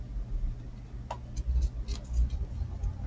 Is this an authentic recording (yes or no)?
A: yes